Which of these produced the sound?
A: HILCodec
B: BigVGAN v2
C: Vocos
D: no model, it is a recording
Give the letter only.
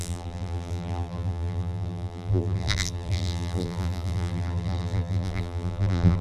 B